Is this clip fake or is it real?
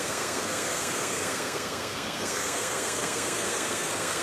fake